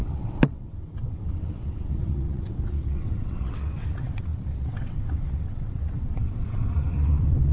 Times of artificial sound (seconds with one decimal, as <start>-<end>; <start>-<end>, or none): 0.0-7.5